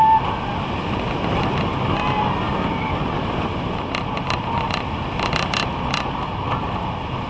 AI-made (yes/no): no